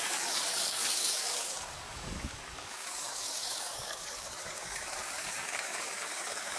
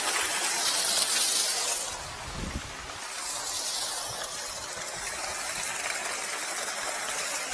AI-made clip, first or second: first